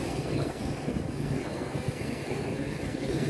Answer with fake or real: fake